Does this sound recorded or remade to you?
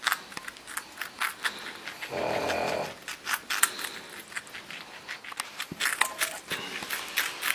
recorded